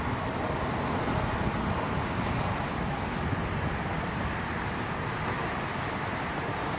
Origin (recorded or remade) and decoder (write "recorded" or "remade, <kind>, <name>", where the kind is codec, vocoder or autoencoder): recorded